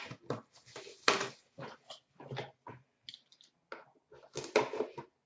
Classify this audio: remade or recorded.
recorded